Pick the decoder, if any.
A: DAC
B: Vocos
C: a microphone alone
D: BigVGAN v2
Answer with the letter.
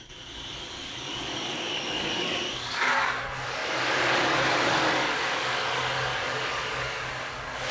A